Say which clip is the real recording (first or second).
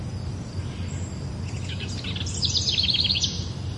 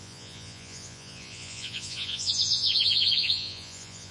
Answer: first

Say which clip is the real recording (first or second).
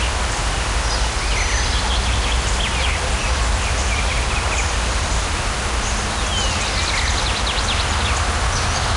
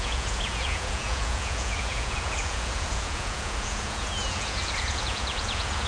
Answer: first